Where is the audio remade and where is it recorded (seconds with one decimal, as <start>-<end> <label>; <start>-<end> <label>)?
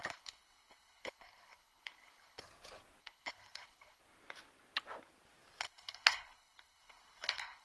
0.0-2.4 remade; 2.4-3.0 recorded; 3.0-4.0 remade; 4.0-5.6 recorded; 5.6-7.6 remade